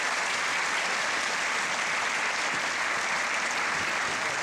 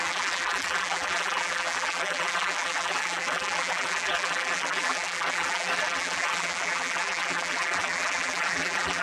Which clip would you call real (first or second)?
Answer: first